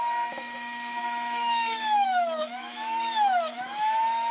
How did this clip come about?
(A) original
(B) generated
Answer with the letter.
B